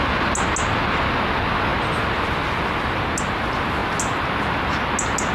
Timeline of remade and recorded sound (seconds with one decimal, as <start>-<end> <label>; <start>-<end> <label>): 0.0-5.3 recorded

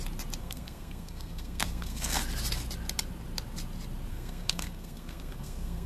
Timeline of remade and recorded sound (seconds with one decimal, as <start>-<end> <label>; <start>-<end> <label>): 0.0-0.4 recorded; 0.4-2.2 remade; 2.2-4.1 recorded; 4.1-5.9 remade